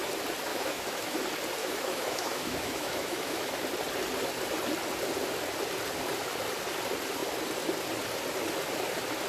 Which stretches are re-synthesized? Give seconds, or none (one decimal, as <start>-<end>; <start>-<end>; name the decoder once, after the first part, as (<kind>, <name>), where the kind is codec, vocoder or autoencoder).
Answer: 0.5-1.2 (autoencoder, DAC-VAE); 1.6-3.5